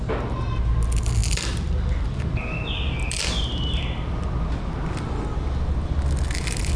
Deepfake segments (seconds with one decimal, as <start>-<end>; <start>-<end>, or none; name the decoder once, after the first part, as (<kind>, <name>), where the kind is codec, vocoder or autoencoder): none